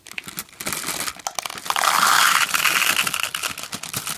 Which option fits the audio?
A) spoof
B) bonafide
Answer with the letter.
B